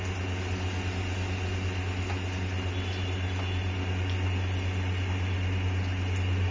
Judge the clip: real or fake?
real